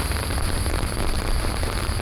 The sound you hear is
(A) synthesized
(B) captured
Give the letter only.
A